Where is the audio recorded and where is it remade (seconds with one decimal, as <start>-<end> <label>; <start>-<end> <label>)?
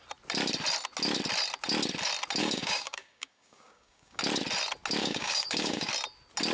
0.0-2.4 recorded; 2.4-4.2 remade; 4.2-5.0 recorded; 5.0-5.9 remade; 5.9-6.5 recorded